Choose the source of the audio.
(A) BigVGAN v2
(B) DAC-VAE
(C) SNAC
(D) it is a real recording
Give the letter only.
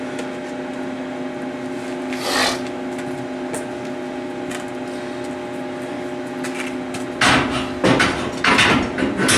D